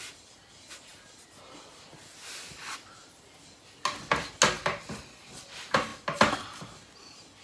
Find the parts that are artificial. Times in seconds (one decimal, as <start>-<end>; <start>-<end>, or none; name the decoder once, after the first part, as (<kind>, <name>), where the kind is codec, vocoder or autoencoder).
none